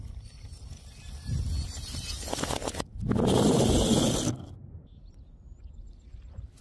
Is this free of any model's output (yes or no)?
yes